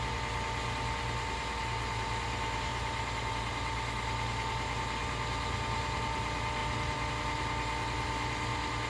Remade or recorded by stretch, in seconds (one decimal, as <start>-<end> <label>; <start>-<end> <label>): 0.0-2.7 recorded; 2.7-3.3 remade; 3.3-8.9 recorded

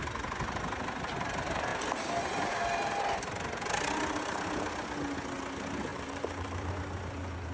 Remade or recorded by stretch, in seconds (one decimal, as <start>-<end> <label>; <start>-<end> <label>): 0.0-5.9 recorded; 5.9-6.7 remade; 6.7-7.5 recorded

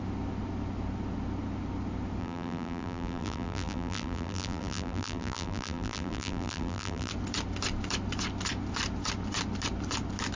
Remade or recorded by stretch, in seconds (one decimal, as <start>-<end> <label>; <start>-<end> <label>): 0.0-2.2 recorded; 2.2-7.1 remade; 7.1-10.4 recorded

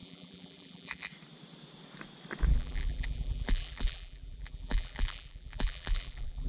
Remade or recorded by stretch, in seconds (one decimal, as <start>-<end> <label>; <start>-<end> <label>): 0.0-1.1 remade; 1.1-2.5 recorded; 2.5-6.5 remade

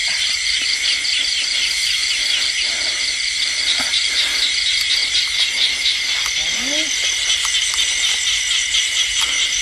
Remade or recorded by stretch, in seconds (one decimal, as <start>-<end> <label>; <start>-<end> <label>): 0.0-4.1 remade; 4.1-9.6 recorded

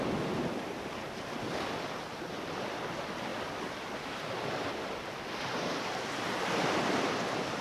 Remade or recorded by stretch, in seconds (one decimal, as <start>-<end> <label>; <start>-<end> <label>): 0.0-7.6 recorded

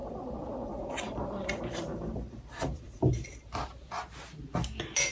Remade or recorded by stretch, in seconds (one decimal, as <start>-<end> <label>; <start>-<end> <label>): 0.0-3.1 remade; 3.1-5.1 recorded

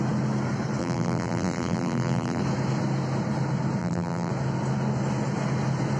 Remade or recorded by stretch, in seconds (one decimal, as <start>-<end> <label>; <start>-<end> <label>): 0.0-0.8 recorded; 0.8-2.4 remade; 2.4-3.8 recorded; 3.8-4.3 remade; 4.3-6.0 recorded